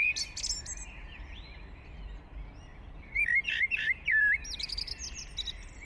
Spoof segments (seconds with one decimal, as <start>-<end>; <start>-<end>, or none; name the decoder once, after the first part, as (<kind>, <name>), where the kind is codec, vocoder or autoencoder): 2.7-4.3 (vocoder, BigVGAN v2)